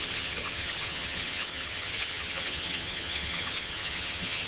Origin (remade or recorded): remade